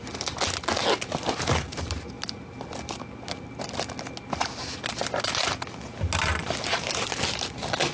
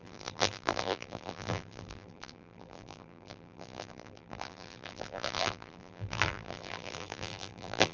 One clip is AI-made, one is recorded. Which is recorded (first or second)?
first